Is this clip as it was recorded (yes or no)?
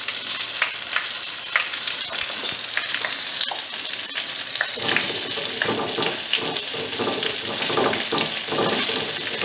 yes